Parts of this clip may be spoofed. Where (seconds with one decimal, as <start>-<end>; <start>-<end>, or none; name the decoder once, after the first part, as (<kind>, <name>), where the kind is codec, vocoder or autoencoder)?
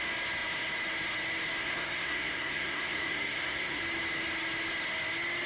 1.6-3.8 (codec, SNAC)